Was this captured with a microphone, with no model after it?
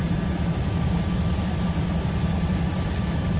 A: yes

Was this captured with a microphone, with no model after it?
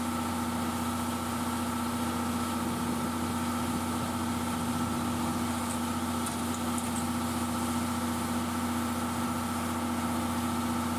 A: yes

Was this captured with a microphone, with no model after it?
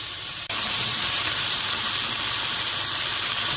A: no